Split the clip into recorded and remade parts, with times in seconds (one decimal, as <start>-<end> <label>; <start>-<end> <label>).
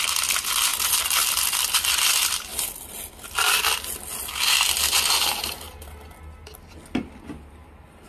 0.0-0.7 recorded; 0.7-2.1 remade; 2.1-8.1 recorded